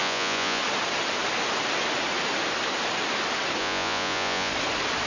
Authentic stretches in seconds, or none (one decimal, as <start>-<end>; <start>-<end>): 0.6-3.6; 4.5-5.1